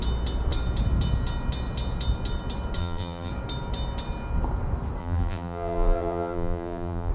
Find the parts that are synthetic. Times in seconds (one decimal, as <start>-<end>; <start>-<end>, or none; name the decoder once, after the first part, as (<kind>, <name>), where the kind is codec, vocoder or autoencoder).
2.8-3.3 (vocoder, BigVGAN v2); 5.0-7.1